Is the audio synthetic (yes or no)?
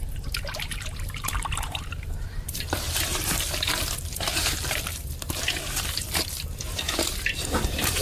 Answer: yes